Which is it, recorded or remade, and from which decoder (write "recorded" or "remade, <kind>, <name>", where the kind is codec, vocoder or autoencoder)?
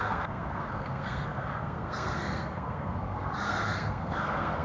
remade, codec, SNAC